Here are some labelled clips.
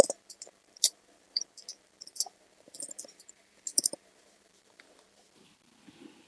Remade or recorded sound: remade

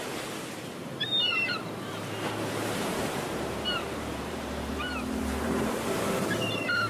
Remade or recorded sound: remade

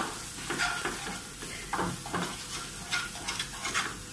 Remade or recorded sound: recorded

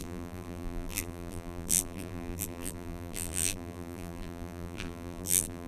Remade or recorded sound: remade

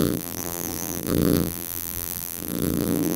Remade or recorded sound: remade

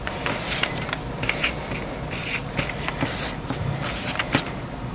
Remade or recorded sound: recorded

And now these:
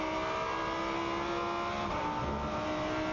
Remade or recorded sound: recorded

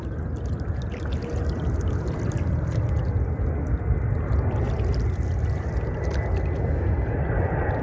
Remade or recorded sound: recorded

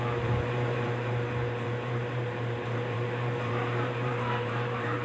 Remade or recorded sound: remade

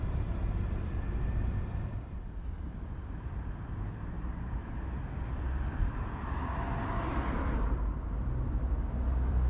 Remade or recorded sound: remade